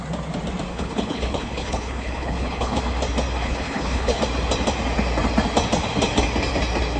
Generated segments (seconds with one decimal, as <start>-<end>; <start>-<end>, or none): 0.7-2.8; 3.4-4.2